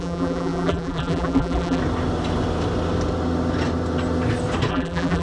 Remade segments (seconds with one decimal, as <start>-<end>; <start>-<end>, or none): 0.0-1.8; 4.7-5.2